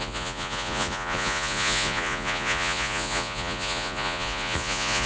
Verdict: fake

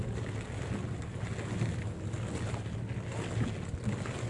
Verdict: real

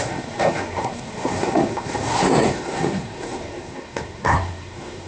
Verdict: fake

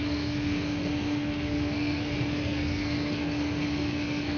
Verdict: fake